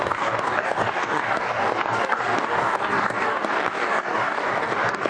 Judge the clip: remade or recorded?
remade